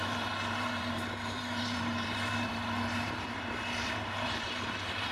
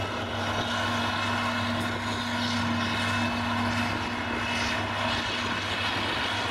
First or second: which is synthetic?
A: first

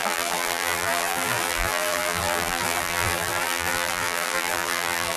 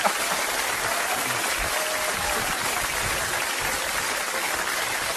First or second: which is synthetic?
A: first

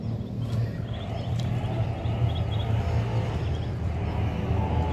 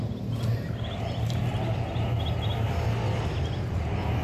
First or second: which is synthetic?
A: second